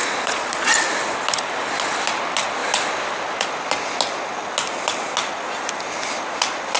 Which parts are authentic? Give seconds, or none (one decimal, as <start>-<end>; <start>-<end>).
0.7-6.8